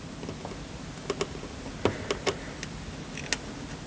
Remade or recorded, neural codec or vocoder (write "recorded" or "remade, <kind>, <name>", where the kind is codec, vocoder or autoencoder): recorded